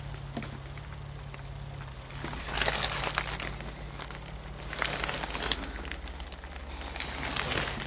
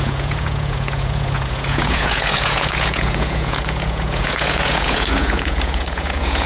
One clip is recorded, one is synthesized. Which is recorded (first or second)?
first